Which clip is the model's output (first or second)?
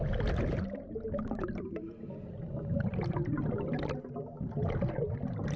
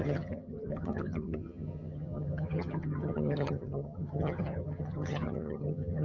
second